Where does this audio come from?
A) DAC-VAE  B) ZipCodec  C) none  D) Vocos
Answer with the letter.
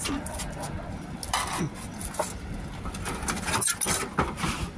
C